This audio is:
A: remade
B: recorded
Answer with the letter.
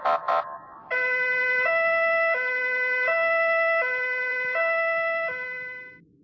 B